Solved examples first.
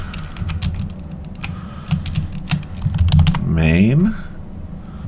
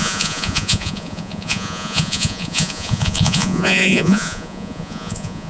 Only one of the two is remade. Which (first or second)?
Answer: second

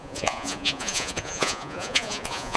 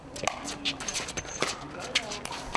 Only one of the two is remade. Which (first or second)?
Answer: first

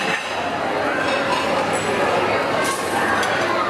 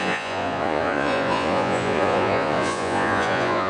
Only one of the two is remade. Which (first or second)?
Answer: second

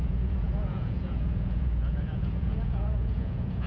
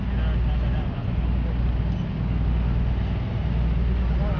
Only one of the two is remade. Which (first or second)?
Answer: first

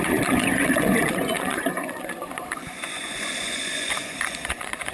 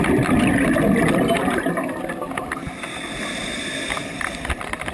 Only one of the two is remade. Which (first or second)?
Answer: first